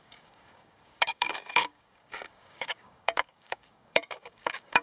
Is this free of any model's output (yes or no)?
no